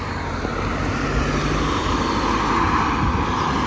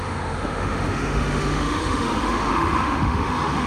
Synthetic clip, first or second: second